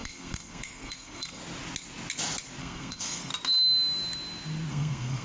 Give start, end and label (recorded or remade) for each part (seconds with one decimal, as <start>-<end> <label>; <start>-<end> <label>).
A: 0.0-1.4 remade; 1.4-2.6 recorded; 2.6-3.3 remade; 3.3-4.7 recorded; 4.7-5.2 remade